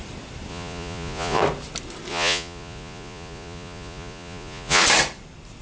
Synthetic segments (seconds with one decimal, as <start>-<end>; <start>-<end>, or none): 0.5-1.4; 2.1-4.8